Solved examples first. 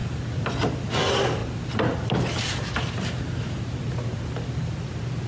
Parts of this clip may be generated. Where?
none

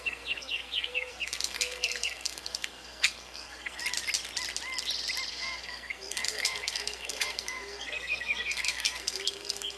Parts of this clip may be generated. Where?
0.0-3.8 (codec, SNAC); 5.3-9.8